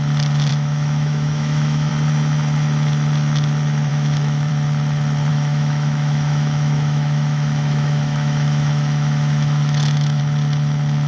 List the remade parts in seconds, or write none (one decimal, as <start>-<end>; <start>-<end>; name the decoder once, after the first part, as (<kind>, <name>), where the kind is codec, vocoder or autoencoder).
0.5-1.9 (autoencoder, DAC-VAE); 3.9-4.5; 5.3-10.2